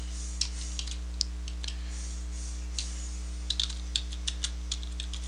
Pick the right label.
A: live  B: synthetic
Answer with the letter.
A